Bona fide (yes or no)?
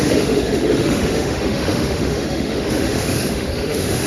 no